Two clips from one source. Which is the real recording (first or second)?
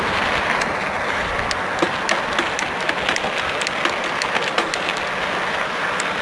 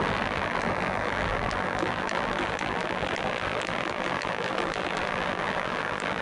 first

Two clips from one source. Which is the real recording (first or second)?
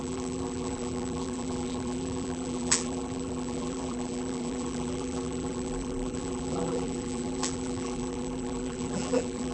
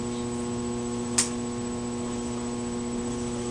second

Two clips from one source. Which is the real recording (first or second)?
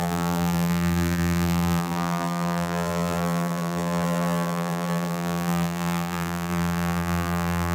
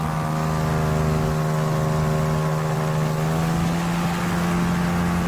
second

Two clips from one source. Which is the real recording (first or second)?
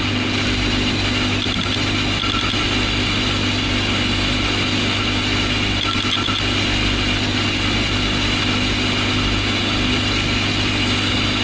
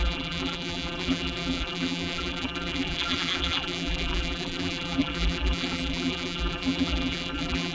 first